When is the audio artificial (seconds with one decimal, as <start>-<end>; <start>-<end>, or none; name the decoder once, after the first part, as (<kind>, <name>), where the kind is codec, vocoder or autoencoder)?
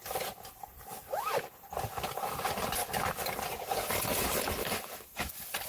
4.6-5.3 (autoencoder, DAC-VAE)